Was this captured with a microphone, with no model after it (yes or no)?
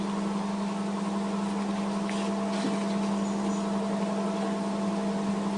yes